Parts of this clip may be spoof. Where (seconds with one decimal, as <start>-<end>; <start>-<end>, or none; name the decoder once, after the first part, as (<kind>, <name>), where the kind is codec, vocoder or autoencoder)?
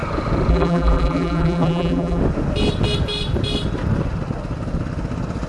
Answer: 0.5-2.2 (vocoder, BigVGAN v2)